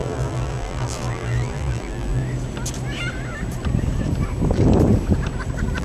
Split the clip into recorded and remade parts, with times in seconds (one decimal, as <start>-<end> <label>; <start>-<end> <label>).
0.0-2.2 remade; 2.2-5.8 recorded